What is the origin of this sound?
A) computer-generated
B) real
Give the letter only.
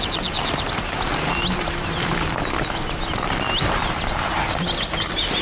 B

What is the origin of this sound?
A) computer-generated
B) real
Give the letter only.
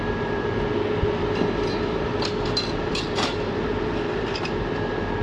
A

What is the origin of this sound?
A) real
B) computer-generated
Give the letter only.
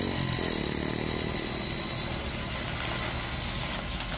A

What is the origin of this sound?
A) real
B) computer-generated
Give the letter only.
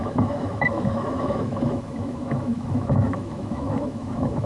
B